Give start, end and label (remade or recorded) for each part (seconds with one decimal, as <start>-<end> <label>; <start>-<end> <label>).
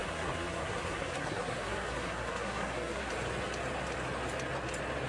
0.0-3.1 remade; 3.1-5.1 recorded